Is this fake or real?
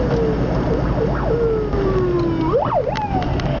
real